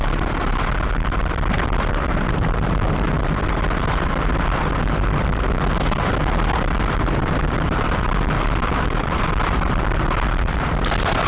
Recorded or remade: remade